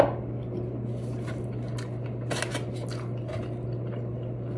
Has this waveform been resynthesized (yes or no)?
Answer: no